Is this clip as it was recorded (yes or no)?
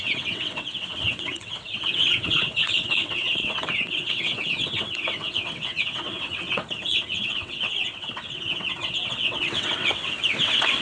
no